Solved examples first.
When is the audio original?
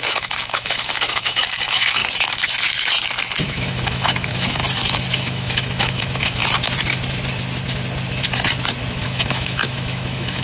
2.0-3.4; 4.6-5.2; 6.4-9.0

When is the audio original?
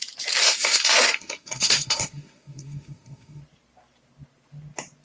0.0-0.4; 3.4-5.0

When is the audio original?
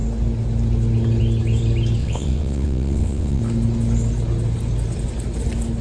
0.0-2.0; 3.4-5.8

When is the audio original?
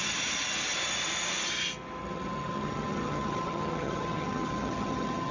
0.0-2.0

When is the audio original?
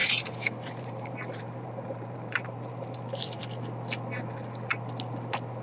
3.4-5.6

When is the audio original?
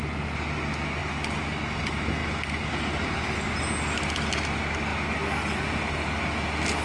0.0-6.8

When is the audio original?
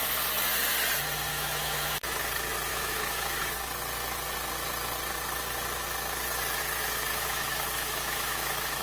0.0-1.3; 2.2-2.7; 3.4-7.1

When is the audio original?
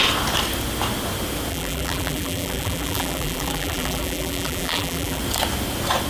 0.0-1.5; 5.2-6.1